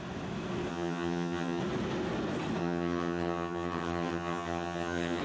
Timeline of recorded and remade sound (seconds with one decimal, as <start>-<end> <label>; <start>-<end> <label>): 0.0-0.7 recorded; 0.7-1.6 remade; 1.6-2.6 recorded; 2.6-5.2 remade